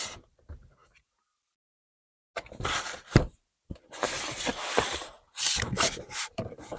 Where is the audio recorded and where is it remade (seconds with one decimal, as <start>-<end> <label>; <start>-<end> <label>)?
0.0-0.8 remade; 0.8-4.9 recorded; 4.9-6.8 remade